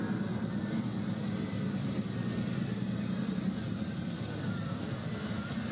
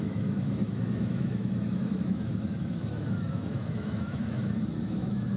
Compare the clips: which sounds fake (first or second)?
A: second